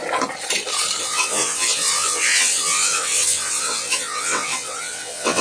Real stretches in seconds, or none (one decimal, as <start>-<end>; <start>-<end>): 0.0-1.0